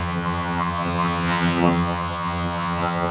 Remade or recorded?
remade